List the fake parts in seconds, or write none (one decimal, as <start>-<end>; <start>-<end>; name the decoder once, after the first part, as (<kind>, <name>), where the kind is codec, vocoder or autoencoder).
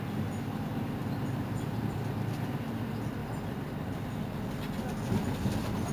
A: 1.0-1.8 (vocoder, BigVGAN v2); 3.2-4.0